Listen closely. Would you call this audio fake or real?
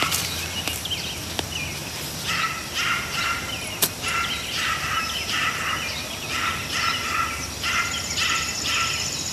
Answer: real